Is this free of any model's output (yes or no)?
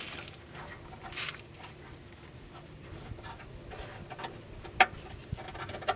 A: yes